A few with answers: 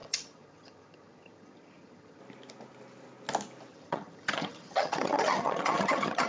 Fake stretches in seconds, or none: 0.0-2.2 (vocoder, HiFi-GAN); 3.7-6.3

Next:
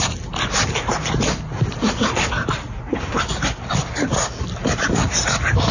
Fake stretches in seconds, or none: none

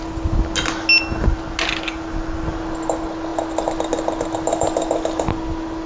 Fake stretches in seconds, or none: none

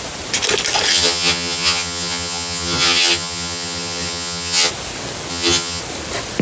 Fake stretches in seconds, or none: 0.9-4.7 (vocoder, HiFi-GAN); 5.3-5.8

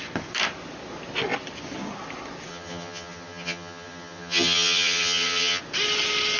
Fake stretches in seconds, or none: 2.5-5.6 (vocoder, HiFi-GAN)